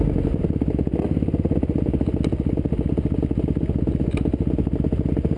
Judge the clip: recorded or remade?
recorded